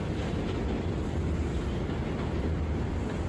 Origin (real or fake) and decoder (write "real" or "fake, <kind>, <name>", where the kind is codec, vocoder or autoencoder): real